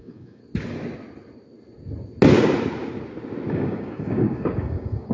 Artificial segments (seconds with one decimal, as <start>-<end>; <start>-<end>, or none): 0.0-0.4; 3.5-5.1

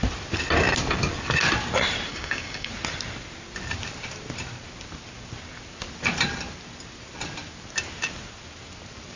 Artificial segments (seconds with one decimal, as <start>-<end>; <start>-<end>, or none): 2.1-2.7